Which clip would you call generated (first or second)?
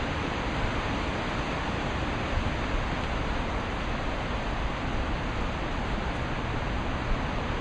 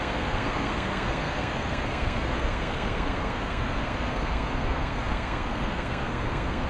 second